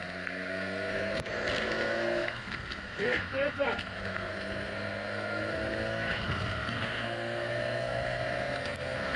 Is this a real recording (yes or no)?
no